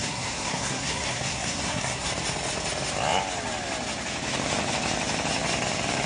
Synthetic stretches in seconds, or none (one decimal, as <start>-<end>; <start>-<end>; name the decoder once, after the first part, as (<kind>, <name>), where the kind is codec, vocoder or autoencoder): 0.0-2.1 (codec, SNAC)

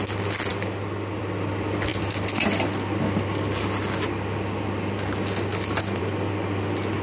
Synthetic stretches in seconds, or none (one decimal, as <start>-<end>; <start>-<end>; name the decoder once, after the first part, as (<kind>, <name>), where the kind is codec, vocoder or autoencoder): none